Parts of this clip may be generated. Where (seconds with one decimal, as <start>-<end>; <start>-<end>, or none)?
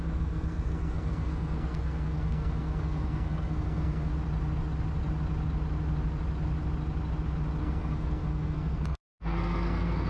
0.0-4.1; 7.6-10.1